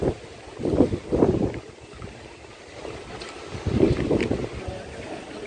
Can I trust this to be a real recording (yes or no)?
yes